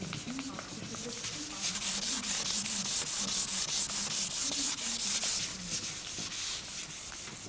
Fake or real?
real